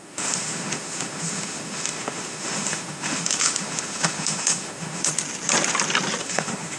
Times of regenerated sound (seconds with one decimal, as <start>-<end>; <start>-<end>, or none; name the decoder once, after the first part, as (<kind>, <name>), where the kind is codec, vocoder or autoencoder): 0.0-5.1 (autoencoder, DAC-VAE); 6.2-6.8